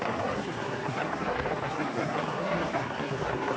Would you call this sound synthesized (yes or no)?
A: yes